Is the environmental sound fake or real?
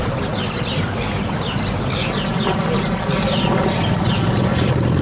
real